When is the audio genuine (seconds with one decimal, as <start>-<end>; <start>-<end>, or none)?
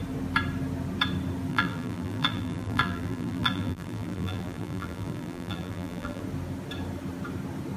0.0-1.5; 6.2-7.8